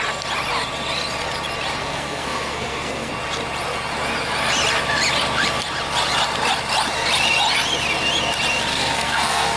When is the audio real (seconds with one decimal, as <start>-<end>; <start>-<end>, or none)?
0.0-1.8; 3.1-8.7